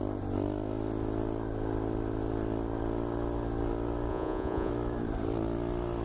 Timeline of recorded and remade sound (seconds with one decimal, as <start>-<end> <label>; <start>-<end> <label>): 0.0-4.1 recorded; 4.1-4.7 remade; 4.7-6.0 recorded